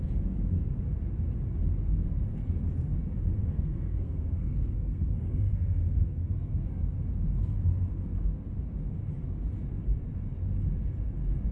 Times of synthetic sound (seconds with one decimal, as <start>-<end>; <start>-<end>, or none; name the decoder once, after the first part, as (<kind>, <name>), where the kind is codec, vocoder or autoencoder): 3.4-6.8 (codec, SNAC)